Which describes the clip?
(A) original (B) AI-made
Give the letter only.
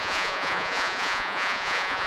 B